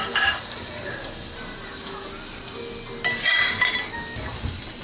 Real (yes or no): yes